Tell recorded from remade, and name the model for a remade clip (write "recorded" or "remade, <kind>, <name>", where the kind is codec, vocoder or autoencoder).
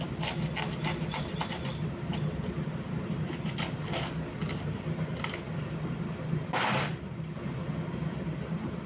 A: recorded